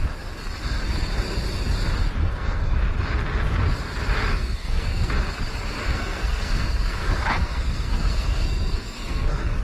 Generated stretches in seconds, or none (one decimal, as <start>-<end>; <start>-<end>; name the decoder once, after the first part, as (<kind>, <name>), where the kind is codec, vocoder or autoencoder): 2.2-2.8 (codec, SNAC); 4.3-5.1; 5.8-9.6